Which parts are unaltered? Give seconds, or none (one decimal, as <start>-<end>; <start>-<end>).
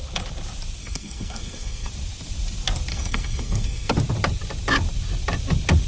0.0-0.8; 1.9-2.9; 3.9-5.9